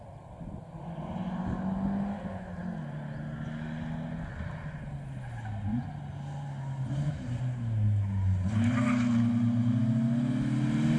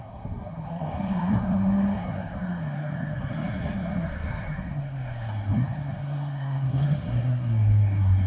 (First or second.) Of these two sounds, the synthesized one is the second